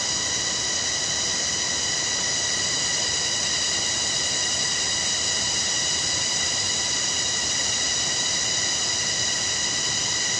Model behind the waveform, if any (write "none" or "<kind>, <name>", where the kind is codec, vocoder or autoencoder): none